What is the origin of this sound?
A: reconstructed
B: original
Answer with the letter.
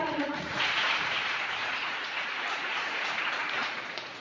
A